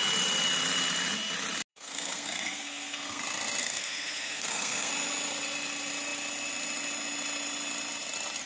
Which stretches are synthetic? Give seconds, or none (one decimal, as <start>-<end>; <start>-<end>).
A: 1.7-3.2; 3.6-4.9